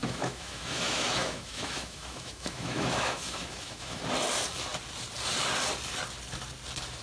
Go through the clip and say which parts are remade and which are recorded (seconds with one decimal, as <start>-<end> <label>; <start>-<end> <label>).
0.0-4.0 remade; 4.0-7.0 recorded